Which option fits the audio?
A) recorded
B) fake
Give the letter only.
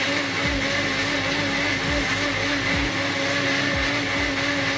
A